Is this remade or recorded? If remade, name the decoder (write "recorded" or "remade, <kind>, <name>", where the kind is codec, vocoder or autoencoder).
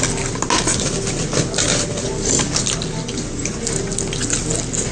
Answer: recorded